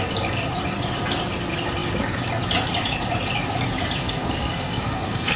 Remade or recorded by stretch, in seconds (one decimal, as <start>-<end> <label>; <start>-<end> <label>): 0.0-4.0 recorded; 4.0-5.4 remade